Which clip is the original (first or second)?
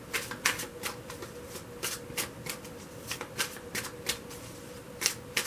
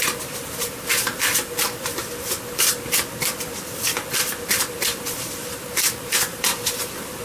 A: first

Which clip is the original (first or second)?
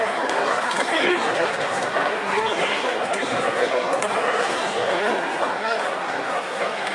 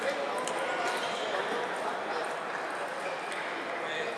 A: second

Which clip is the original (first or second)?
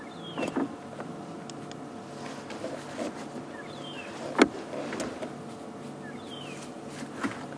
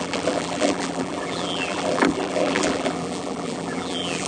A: first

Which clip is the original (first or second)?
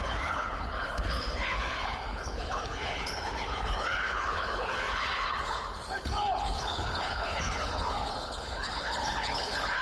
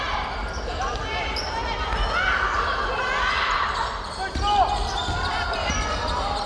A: second